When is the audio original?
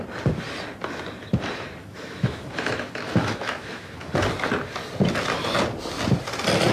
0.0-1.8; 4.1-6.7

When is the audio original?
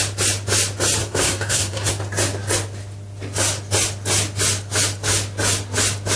0.0-1.0; 1.9-6.2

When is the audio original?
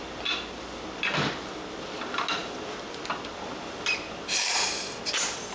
0.0-5.5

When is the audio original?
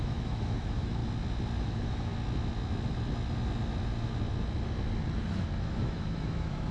1.0-1.6; 2.1-5.6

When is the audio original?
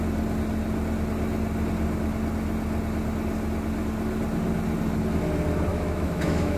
0.0-5.7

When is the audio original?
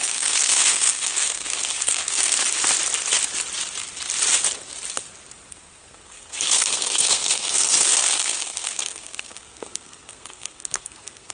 2.4-5.5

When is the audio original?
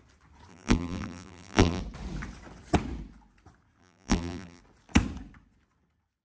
0.0-0.5; 1.8-3.8; 4.6-6.2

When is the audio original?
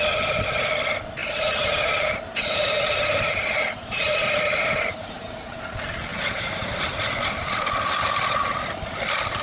0.0-1.2; 5.6-6.1; 7.0-9.4